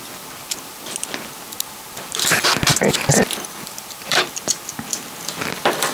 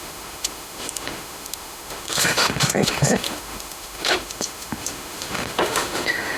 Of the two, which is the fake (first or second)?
second